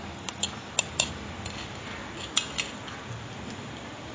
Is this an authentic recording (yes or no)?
yes